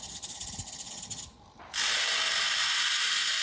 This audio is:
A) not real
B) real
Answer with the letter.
B